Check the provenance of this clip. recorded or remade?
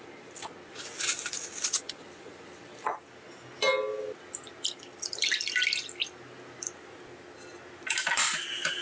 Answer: recorded